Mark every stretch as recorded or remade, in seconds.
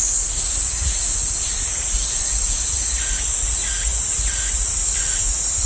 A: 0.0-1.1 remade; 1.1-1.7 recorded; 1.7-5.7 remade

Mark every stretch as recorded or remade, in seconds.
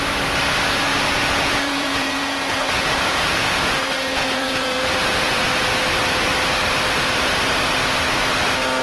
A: 0.0-0.9 recorded; 0.9-5.7 remade; 5.7-8.8 recorded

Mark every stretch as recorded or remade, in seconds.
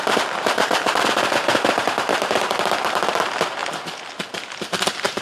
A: 0.0-3.6 remade; 3.6-4.8 recorded; 4.8-5.2 remade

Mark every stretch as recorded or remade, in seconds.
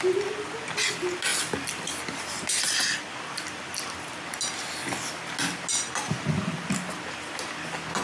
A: 0.0-8.0 recorded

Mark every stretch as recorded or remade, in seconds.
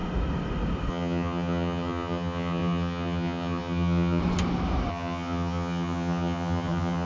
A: 0.0-0.9 recorded; 0.9-4.2 remade; 4.2-4.9 recorded; 4.9-7.1 remade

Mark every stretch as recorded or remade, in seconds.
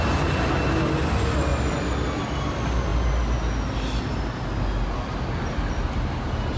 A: 0.0-6.6 recorded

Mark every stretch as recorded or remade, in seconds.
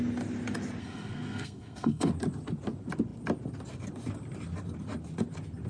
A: 0.0-0.8 recorded; 0.8-2.1 remade; 2.1-5.7 recorded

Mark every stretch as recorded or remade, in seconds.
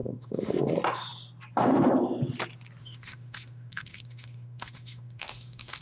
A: 0.0-0.7 remade; 0.7-2.8 recorded; 2.8-5.8 remade